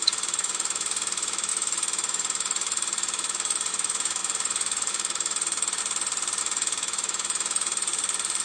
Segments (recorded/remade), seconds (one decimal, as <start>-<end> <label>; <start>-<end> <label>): 0.0-5.8 remade; 5.8-6.4 recorded; 6.4-7.9 remade; 7.9-8.4 recorded